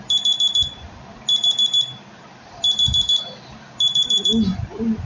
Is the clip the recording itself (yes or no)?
yes